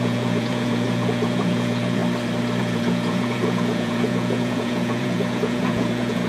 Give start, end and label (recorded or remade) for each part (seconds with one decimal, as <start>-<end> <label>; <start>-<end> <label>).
0.0-2.0 remade; 2.0-2.6 recorded; 2.6-6.3 remade